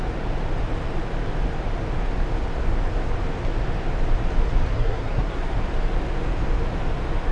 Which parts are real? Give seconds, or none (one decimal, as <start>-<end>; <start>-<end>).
0.0-4.7; 5.5-7.3